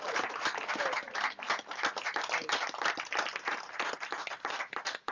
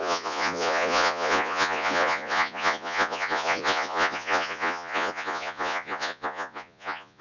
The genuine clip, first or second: first